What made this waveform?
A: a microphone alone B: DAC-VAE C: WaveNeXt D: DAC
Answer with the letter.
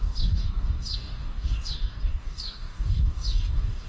D